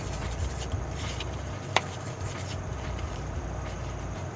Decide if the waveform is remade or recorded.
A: remade